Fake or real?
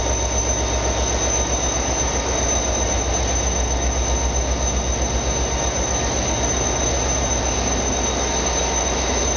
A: real